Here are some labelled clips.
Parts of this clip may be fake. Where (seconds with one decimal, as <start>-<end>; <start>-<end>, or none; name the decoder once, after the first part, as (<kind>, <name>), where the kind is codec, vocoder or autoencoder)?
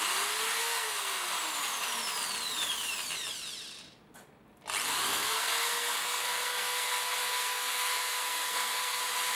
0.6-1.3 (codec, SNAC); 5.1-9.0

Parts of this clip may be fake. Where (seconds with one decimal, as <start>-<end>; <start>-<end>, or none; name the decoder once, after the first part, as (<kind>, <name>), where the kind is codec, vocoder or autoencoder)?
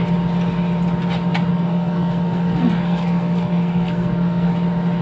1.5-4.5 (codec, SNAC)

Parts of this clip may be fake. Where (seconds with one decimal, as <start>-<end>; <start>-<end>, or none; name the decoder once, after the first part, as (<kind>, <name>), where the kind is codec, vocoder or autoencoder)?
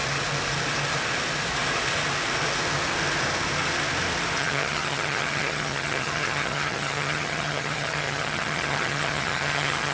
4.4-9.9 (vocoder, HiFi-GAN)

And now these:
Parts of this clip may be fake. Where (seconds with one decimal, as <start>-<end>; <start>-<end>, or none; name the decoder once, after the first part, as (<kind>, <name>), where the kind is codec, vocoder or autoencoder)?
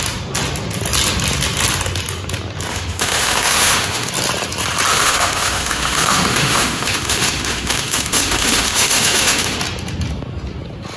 2.7-4.1 (autoencoder, DAC-VAE); 4.9-9.6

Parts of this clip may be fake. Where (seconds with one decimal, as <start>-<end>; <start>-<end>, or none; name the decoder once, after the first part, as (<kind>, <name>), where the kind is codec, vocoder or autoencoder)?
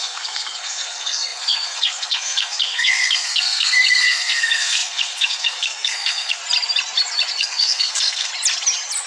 0.0-6.4 (codec, SNAC); 7.4-8.3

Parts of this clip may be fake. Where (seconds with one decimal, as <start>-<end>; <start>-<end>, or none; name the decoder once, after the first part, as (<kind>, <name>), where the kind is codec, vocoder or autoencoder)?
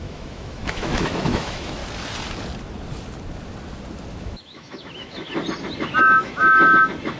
0.0-1.8 (autoencoder, DAC-VAE); 4.1-5.3; 6.0-6.4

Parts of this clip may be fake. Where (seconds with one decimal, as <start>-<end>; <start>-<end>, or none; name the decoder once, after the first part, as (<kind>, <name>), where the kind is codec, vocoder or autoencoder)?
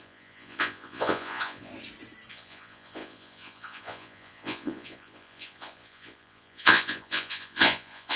0.0-1.7 (vocoder, Vocos); 2.3-8.2